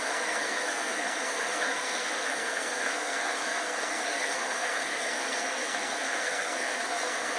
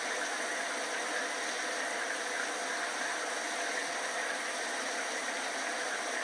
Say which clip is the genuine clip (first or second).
second